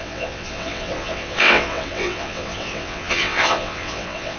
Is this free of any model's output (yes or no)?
no